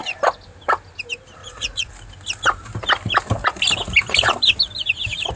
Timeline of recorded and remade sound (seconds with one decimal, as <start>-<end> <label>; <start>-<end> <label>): 0.0-1.4 recorded; 1.4-1.9 remade; 1.9-5.4 recorded